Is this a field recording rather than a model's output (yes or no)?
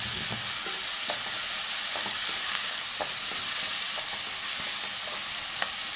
yes